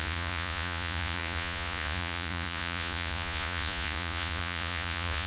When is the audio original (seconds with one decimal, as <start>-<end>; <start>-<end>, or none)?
none